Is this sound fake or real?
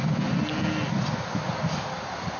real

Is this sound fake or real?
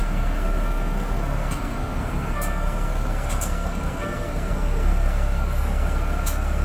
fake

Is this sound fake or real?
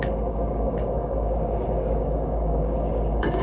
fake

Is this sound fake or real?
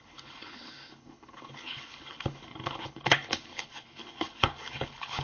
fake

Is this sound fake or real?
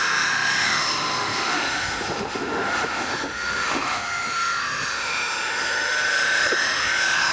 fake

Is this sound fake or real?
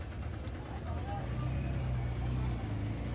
real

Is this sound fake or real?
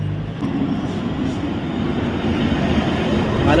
real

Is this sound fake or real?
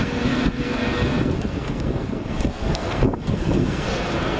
fake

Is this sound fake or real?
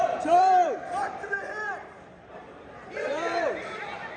fake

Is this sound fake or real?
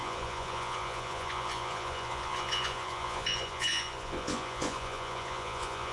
fake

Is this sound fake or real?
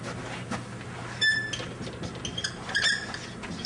real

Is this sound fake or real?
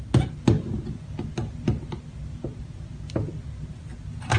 real